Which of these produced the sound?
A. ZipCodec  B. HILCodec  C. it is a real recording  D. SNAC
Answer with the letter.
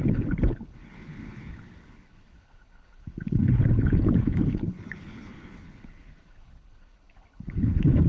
B